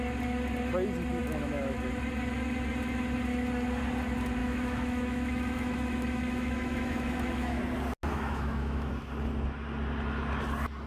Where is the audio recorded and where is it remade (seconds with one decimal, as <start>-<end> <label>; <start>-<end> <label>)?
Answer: 0.0-1.2 recorded; 1.2-1.9 remade; 1.9-4.4 recorded; 4.4-7.6 remade; 7.6-8.1 recorded; 8.1-8.9 remade; 8.9-10.9 recorded